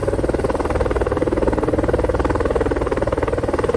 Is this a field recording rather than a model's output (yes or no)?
yes